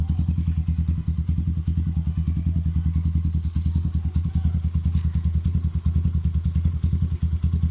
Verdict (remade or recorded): recorded